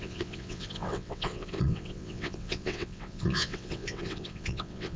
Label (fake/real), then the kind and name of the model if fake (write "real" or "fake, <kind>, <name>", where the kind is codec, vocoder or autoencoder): fake, vocoder, WaveNeXt